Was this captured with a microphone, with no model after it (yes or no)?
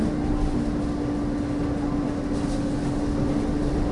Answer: yes